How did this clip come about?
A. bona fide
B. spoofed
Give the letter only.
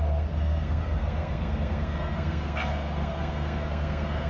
B